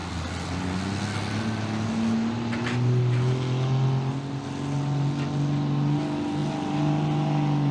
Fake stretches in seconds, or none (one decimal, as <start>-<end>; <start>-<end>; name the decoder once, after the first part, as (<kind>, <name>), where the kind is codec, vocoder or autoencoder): none